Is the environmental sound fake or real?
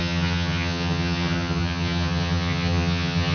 fake